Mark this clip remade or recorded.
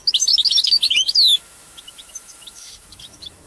remade